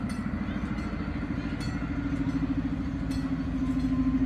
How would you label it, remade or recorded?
recorded